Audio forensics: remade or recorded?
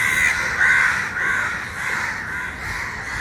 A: recorded